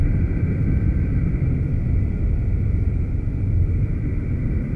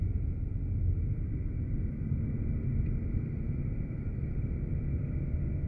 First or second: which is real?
second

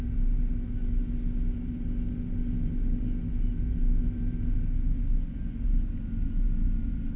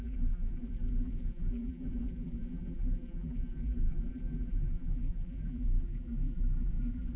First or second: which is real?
first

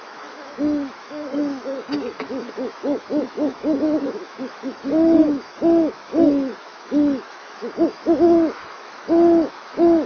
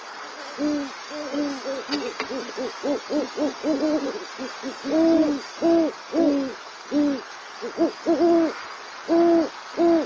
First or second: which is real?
second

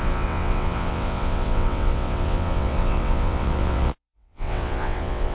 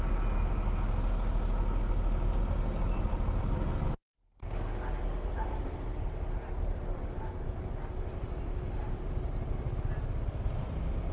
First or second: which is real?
second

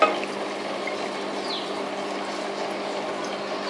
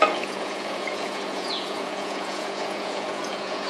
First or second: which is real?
first